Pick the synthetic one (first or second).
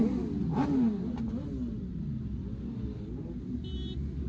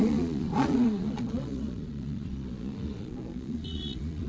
second